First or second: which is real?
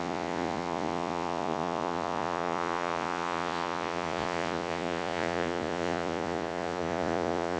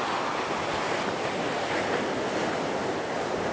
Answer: second